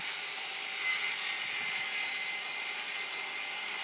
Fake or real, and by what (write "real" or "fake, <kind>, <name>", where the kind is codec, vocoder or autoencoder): real